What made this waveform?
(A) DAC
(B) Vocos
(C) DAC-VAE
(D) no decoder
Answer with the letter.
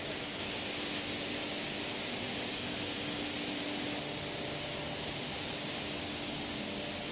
D